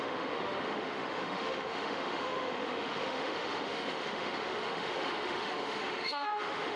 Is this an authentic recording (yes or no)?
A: no